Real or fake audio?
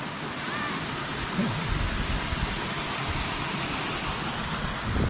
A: real